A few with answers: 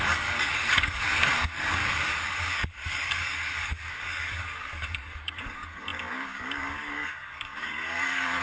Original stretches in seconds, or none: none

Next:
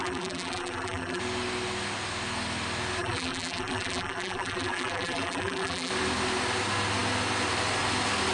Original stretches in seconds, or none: 1.2-3.0; 5.9-8.3